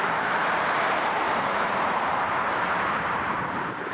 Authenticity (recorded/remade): remade